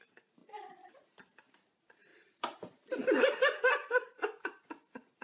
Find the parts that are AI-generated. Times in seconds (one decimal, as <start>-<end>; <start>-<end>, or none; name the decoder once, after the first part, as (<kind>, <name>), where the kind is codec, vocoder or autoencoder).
0.4-0.9 (vocoder, BigVGAN v2); 2.1-4.4